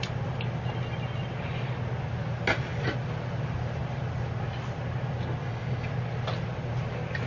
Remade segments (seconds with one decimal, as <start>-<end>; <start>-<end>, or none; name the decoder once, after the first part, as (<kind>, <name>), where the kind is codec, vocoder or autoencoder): 5.4-5.9 (codec, DAC)